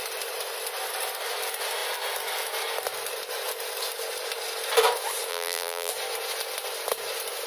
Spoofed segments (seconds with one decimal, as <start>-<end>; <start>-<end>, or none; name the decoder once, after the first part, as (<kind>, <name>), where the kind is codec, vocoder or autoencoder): 5.3-5.9 (vocoder, BigVGAN v2)